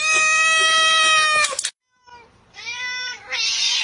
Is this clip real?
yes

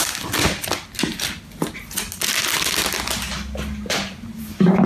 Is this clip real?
yes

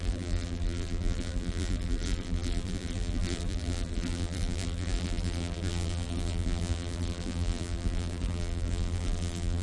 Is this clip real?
no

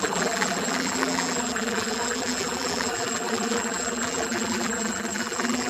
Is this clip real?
no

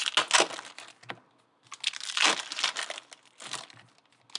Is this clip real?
yes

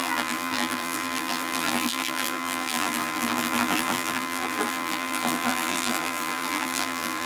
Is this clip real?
no